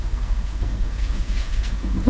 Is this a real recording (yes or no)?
no